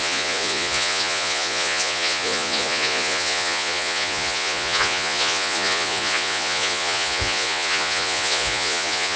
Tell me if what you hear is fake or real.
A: fake